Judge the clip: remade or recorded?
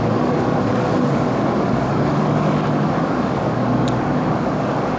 remade